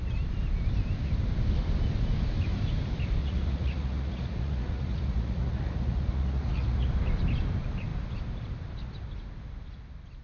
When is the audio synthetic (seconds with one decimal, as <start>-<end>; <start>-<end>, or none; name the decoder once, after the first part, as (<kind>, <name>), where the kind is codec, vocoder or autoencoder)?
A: 3.2-6.9 (vocoder, Vocos)